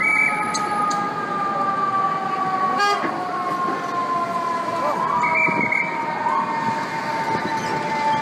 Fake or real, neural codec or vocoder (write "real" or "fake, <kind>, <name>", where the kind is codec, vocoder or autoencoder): real